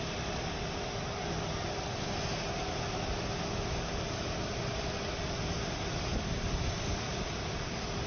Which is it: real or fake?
real